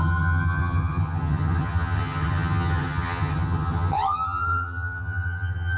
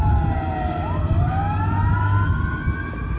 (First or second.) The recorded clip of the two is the second